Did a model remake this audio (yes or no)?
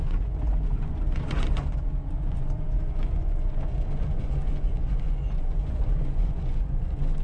yes